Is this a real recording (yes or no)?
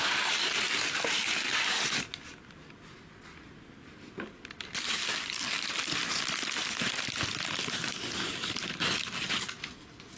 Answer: yes